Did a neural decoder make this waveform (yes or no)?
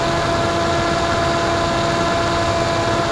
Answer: no